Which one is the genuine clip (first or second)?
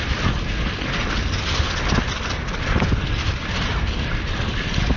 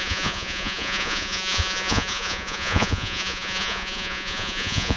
first